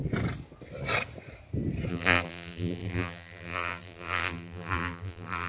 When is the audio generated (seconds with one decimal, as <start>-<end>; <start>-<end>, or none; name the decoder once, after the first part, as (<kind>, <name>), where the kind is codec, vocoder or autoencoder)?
1.9-5.5 (vocoder, BigVGAN v2)